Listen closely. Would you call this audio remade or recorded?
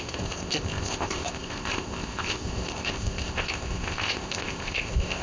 remade